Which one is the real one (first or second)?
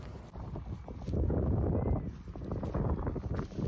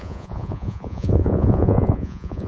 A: first